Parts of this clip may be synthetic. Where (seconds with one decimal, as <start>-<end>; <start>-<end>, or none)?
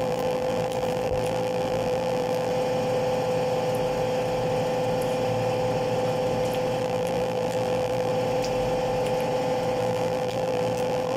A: 0.0-2.5; 6.8-8.1; 9.8-11.2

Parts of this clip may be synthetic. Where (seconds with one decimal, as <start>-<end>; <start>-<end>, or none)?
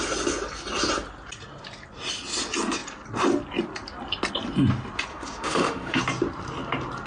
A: 5.1-6.0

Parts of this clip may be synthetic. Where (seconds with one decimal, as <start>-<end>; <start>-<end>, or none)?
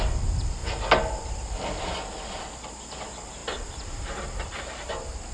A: 0.0-0.6; 1.8-5.3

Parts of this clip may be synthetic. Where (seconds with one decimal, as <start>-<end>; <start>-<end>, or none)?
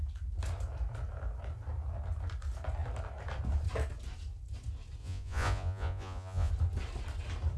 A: 5.0-6.5